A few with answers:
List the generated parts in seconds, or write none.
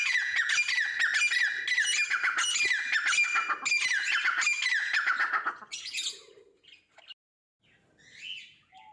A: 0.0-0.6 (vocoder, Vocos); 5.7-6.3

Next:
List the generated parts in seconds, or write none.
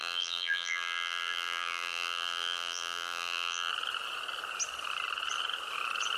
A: 0.0-3.7 (vocoder, BigVGAN v2)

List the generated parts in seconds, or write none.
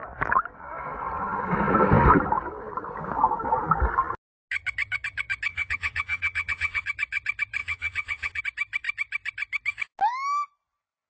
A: 5.5-6.8 (vocoder, HiFi-GAN); 7.6-8.4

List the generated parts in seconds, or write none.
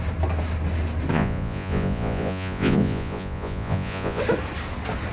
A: 1.1-4.2 (vocoder, Vocos)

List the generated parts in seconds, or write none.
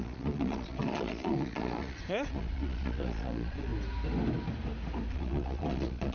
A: 0.0-3.7 (vocoder, Vocos); 5.1-6.1